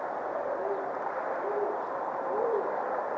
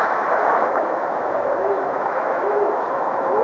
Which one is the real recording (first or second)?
first